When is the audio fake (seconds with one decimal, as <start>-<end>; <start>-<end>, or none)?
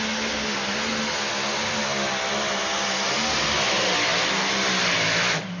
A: none